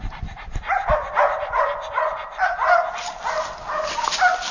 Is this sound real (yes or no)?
yes